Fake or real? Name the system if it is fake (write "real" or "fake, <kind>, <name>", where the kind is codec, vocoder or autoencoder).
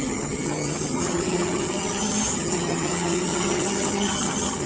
fake, vocoder, HiFi-GAN